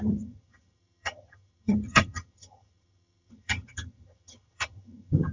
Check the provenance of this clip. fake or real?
fake